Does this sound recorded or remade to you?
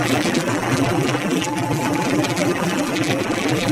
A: remade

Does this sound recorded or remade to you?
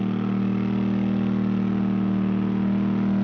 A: recorded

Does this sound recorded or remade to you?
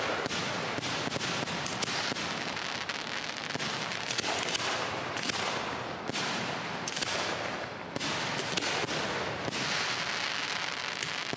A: recorded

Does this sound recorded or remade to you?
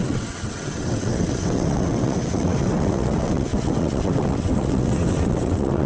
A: remade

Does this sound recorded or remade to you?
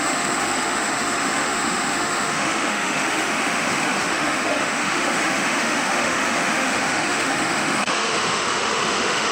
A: remade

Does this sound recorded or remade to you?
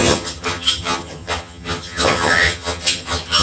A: remade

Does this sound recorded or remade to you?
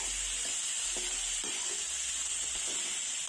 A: recorded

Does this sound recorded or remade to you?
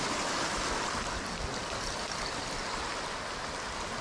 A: recorded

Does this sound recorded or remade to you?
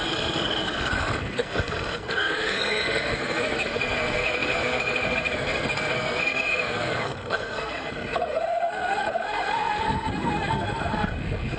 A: remade